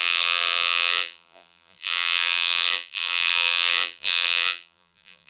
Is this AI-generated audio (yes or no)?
yes